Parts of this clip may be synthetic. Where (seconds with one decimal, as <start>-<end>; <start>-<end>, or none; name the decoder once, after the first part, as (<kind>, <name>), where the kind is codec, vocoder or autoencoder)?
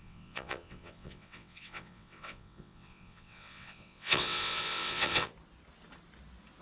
0.0-5.3 (vocoder, WaveNeXt)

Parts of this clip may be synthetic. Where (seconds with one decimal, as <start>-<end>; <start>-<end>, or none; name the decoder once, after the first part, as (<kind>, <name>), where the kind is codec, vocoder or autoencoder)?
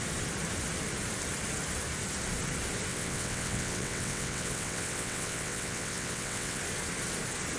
2.9-6.6 (vocoder, WaveNeXt)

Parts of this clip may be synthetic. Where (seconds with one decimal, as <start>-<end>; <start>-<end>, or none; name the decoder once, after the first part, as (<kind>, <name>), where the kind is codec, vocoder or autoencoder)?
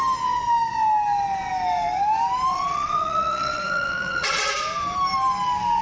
2.5-4.5 (vocoder, WaveNeXt)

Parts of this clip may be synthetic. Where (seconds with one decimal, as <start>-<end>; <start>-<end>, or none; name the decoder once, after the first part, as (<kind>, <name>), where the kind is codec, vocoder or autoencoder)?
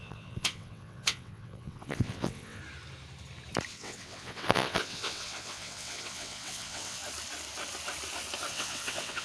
0.0-2.6 (vocoder, WaveNeXt); 3.7-7.0; 8.5-9.2